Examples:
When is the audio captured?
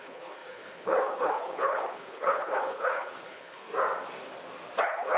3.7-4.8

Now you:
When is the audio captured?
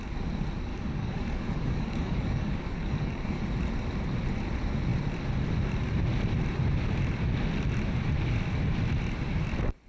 0.0-0.7; 3.4-9.9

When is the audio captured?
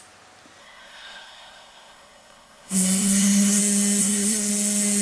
0.0-0.6; 3.6-4.0; 4.5-5.0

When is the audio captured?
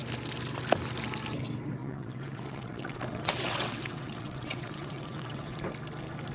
0.0-1.8; 5.6-6.3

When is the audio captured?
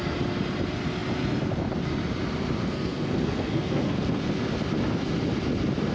0.0-2.6; 4.2-5.9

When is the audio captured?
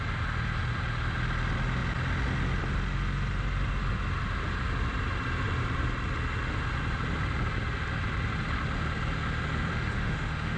0.0-9.7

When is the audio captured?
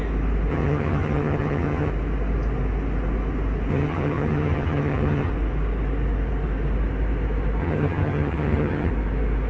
0.0-0.5; 1.9-3.7; 5.3-7.6; 8.9-9.5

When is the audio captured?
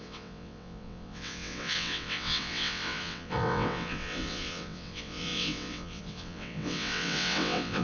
none